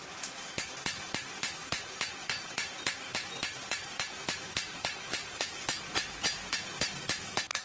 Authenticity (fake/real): real